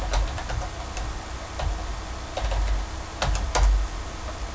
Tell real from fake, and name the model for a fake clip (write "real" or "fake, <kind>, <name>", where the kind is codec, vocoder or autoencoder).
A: real